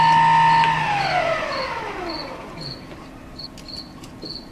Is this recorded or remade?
recorded